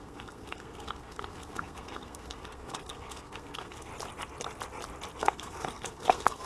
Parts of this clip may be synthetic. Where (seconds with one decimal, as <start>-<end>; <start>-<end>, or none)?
0.0-3.9; 5.2-6.5